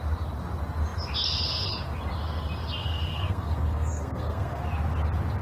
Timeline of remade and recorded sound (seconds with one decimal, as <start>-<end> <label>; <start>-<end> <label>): 0.0-2.8 recorded; 2.8-4.6 remade; 4.6-5.4 recorded

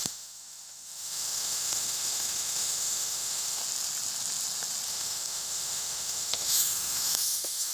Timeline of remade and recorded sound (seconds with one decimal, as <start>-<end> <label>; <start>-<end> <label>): 0.0-3.6 remade; 3.6-4.9 recorded; 4.9-7.7 remade

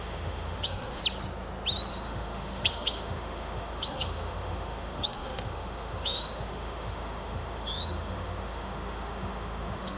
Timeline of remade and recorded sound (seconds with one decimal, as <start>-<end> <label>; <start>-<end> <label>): 0.0-1.0 remade; 1.0-1.9 recorded; 1.9-10.0 remade

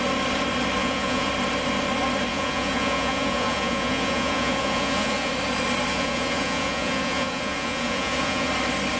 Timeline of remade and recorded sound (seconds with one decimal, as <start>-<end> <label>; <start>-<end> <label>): 0.0-0.8 recorded; 0.8-1.3 remade; 1.3-2.3 recorded; 2.3-5.3 remade; 5.3-5.9 recorded; 5.9-8.5 remade; 8.5-9.0 recorded